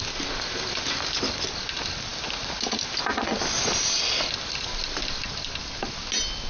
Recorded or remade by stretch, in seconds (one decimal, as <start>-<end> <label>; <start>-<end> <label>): 0.0-6.5 recorded